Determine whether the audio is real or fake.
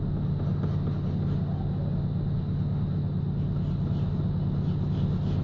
real